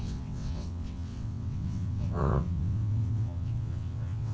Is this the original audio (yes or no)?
no